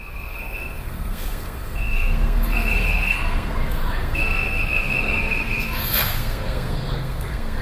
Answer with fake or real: fake